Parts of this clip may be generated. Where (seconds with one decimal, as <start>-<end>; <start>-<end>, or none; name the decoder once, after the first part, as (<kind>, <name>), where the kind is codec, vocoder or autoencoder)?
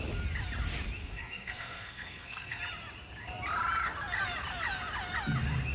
1.0-2.6 (codec, SNAC)